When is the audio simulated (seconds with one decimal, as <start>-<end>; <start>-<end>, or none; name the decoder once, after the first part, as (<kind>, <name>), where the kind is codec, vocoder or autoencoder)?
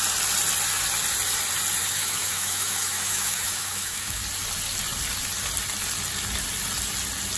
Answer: 1.8-4.2 (autoencoder, DAC-VAE)